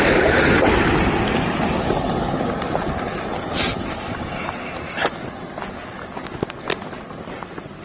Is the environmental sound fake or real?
real